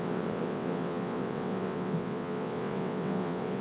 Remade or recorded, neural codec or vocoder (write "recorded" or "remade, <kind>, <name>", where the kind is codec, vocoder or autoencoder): remade, vocoder, WaveNeXt